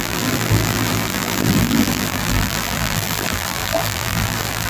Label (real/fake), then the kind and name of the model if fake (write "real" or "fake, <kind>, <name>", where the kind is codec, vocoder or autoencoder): fake, vocoder, BigVGAN v2